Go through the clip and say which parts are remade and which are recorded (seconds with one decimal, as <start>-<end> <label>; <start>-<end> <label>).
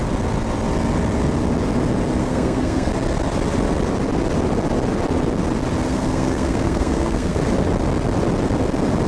0.0-2.2 recorded; 2.2-2.9 remade; 2.9-5.9 recorded; 5.9-7.4 remade; 7.4-9.1 recorded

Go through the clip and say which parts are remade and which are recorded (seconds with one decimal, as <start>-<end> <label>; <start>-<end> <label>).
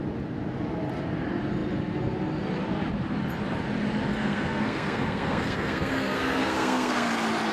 0.0-4.1 recorded; 4.1-7.1 remade; 7.1-7.5 recorded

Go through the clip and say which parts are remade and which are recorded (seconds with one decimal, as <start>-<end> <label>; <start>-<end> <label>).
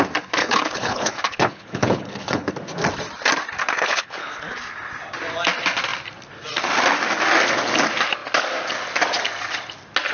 0.0-0.4 recorded; 0.4-2.5 remade; 2.5-3.6 recorded; 3.6-4.3 remade; 4.3-10.1 recorded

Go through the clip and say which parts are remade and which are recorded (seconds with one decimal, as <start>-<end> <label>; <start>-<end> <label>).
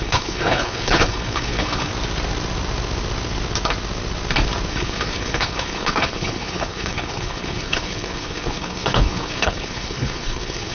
0.0-1.9 remade; 1.9-4.7 recorded; 4.7-10.7 remade